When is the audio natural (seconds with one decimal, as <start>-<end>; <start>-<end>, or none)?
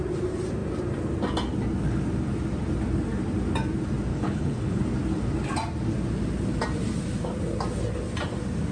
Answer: 0.0-4.1; 4.8-8.7